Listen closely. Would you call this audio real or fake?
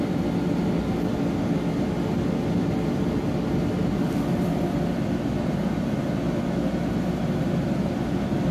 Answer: real